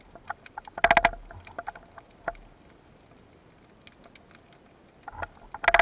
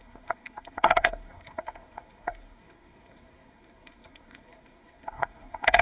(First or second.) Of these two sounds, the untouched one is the first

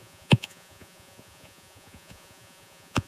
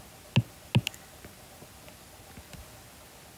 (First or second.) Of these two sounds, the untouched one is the second